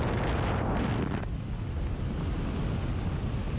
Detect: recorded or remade recorded